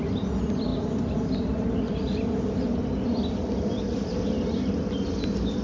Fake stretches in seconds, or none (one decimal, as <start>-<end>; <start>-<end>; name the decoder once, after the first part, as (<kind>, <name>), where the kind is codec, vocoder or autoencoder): none